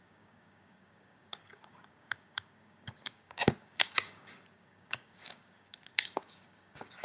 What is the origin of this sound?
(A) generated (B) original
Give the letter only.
A